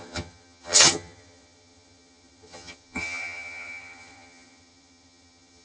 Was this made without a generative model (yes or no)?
no